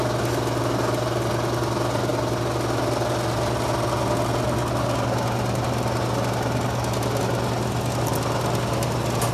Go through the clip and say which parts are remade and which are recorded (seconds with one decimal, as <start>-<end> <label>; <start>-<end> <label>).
0.0-9.3 recorded